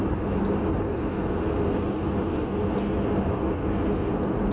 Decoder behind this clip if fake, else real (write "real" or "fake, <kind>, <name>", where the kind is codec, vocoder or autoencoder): real